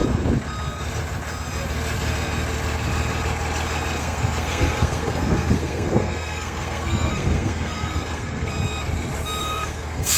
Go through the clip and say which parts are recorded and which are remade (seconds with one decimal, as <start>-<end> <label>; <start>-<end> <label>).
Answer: 0.0-4.0 recorded; 4.0-8.5 remade; 8.5-9.4 recorded; 9.4-10.2 remade